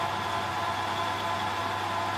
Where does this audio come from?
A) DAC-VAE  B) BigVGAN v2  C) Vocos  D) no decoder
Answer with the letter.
D